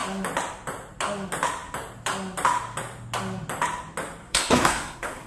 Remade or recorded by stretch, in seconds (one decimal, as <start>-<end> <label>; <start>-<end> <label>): 0.0-4.2 recorded; 4.2-5.3 remade